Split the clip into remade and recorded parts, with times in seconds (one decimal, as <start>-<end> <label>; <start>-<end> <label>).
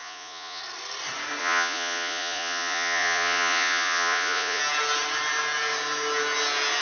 0.0-0.6 remade; 0.6-1.4 recorded; 1.4-4.6 remade; 4.6-6.8 recorded